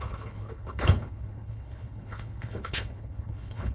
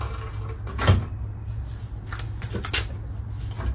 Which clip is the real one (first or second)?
second